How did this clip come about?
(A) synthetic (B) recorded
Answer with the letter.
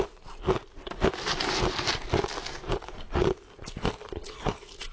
B